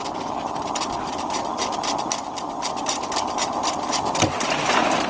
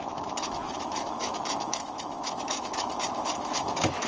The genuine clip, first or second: first